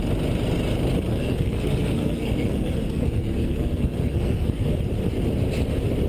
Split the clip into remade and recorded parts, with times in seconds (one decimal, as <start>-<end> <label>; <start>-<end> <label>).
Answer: 0.0-1.1 recorded; 1.1-4.8 remade; 4.8-6.1 recorded

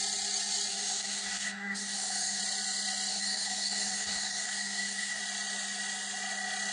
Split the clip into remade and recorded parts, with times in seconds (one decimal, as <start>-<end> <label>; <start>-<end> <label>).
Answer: 0.0-0.7 recorded; 0.7-2.4 remade; 2.4-3.1 recorded; 3.1-5.2 remade; 5.2-6.7 recorded

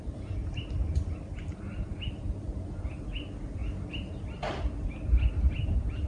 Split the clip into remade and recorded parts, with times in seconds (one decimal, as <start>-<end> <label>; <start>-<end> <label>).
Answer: 0.0-6.1 recorded

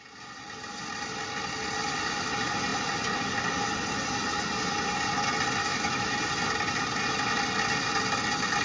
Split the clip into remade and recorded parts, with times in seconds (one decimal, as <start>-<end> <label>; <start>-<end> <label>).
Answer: 0.0-5.6 recorded; 5.6-6.2 remade; 6.2-8.6 recorded

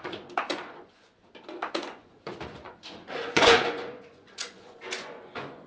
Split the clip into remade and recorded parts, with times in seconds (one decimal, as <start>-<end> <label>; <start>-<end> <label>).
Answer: 0.0-1.2 remade; 1.2-1.7 recorded; 1.7-5.7 remade

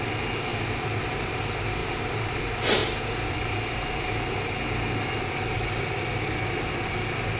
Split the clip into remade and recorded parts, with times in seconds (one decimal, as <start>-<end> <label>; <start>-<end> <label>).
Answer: 0.0-1.8 recorded; 1.8-2.4 remade; 2.4-2.8 recorded; 2.8-4.6 remade; 4.6-7.4 recorded

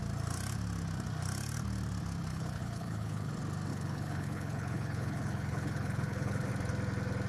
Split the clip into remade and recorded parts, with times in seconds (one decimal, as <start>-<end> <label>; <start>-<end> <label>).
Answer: 0.0-2.3 recorded; 2.3-3.3 remade; 3.3-3.7 recorded; 3.7-6.5 remade; 6.5-7.3 recorded